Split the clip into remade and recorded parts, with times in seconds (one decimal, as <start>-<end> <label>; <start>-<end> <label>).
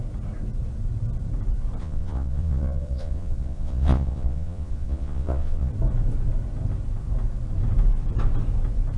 0.0-1.8 recorded; 1.8-5.7 remade; 5.7-9.0 recorded